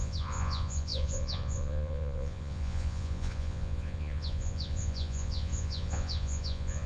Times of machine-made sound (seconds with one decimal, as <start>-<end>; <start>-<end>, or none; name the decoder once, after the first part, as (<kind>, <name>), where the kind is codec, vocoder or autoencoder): 0.0-6.9 (vocoder, Vocos)